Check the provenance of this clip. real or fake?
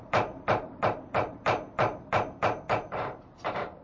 fake